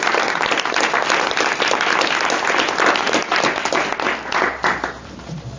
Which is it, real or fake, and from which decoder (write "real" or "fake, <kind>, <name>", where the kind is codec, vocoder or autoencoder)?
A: real